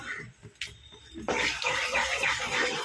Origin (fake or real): real